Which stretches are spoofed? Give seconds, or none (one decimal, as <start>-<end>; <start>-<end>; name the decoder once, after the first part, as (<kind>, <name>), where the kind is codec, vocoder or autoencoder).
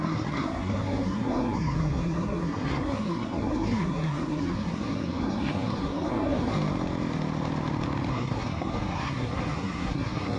0.0-6.5 (codec, SNAC); 8.1-10.4